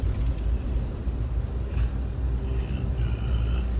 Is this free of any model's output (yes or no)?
yes